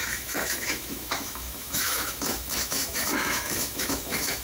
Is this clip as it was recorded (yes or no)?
no